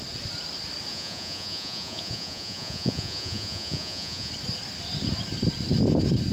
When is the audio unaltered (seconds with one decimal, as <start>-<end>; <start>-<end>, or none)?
0.0-0.9; 4.3-6.3